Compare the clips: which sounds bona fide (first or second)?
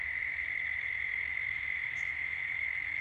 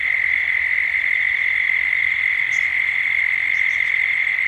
second